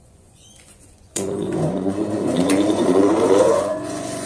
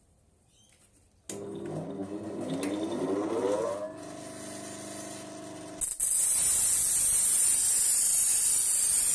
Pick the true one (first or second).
second